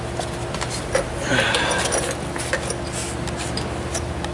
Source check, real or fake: real